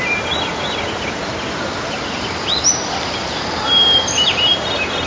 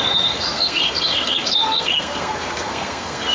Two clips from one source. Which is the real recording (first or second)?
first